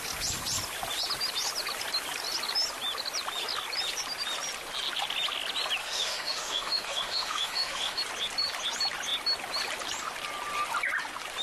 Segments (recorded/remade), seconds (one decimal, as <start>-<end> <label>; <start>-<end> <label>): 0.0-5.8 recorded; 5.8-8.0 remade; 8.0-11.4 recorded